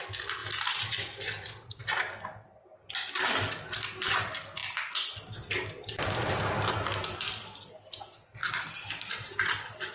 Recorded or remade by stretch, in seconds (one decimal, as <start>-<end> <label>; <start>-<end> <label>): 0.0-9.9 recorded